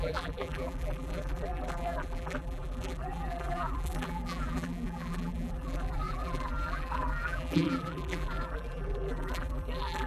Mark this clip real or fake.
fake